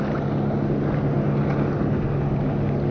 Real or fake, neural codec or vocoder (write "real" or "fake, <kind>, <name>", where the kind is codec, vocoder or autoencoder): real